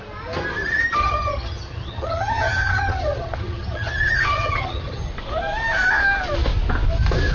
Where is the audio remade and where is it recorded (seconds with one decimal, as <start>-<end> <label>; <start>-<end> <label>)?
0.0-1.0 recorded; 1.0-5.1 remade; 5.1-7.3 recorded